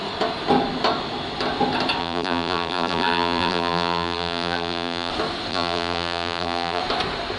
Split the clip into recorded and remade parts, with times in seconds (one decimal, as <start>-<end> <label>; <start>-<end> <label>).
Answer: 0.0-2.0 recorded; 2.0-5.1 remade; 5.1-5.5 recorded; 5.5-6.8 remade; 6.8-7.4 recorded